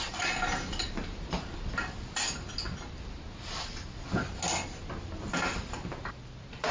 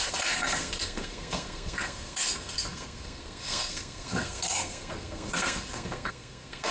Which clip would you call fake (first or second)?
second